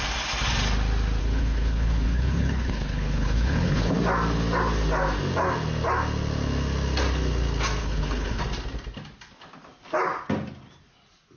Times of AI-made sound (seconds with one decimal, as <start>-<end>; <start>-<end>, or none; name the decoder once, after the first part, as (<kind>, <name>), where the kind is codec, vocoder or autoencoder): 1.2-3.9 (codec, HILCodec); 7.8-8.4

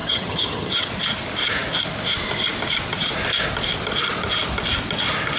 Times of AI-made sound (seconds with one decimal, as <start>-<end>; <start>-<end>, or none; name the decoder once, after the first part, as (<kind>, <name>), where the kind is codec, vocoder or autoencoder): 0.0-0.9 (vocoder, HiFi-GAN)

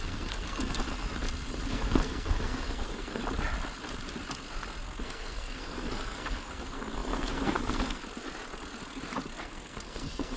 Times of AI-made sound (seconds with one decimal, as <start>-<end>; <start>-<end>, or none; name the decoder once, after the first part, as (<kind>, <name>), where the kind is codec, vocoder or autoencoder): 0.0-0.8 (codec, SNAC); 1.7-3.2; 5.0-8.0; 9.4-10.4

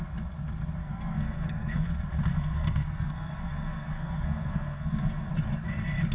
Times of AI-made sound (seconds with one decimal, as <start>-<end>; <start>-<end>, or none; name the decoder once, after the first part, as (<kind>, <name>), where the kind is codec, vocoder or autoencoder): 0.8-1.9 (codec, SNAC); 2.3-5.3